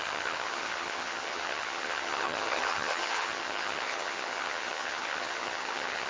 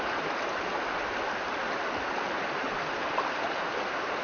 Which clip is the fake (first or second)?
first